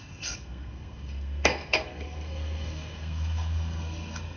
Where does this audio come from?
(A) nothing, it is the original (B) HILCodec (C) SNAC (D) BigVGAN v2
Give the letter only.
C